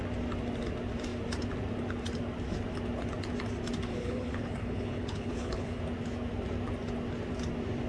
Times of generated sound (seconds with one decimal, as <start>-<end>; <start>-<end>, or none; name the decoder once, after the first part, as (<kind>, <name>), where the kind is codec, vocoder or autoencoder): 3.9-5.8 (codec, HILCodec)